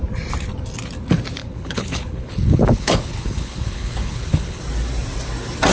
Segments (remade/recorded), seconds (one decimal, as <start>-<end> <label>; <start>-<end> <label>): 0.0-1.4 recorded; 1.4-4.6 remade; 4.6-5.7 recorded